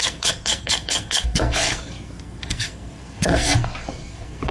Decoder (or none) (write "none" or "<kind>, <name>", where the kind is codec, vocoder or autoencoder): codec, SNAC